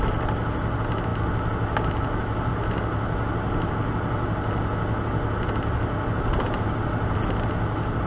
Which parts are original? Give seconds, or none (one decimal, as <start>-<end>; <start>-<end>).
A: 0.0-8.1